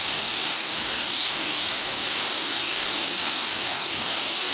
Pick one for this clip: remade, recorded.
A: remade